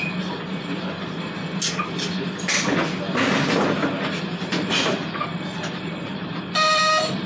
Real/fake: real